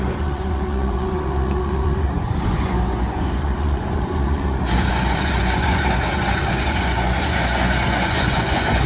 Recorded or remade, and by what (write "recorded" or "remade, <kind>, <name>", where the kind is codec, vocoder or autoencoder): remade, vocoder, Vocos